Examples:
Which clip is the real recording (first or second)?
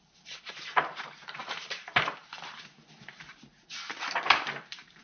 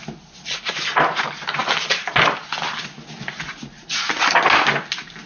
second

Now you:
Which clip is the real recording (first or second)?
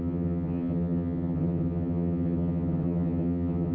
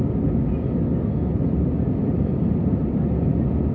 second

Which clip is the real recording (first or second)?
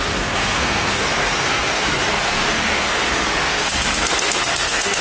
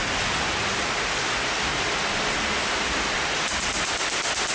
second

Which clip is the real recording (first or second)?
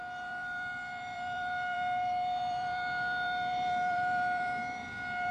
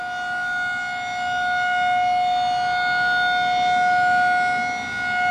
second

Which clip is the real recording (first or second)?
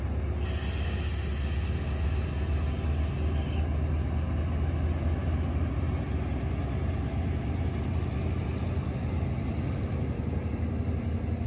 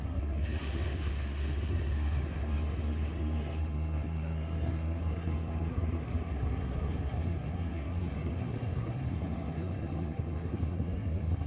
first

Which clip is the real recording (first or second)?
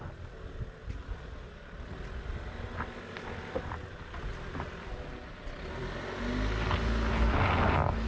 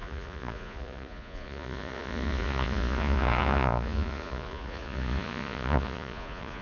first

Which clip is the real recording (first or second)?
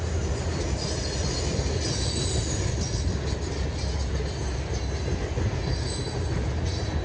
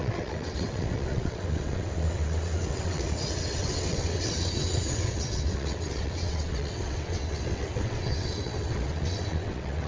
first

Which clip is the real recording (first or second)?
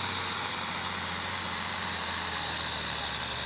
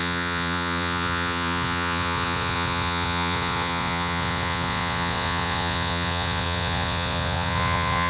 first